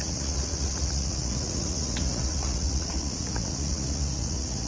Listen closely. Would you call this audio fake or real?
fake